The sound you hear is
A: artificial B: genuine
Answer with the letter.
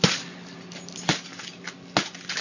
B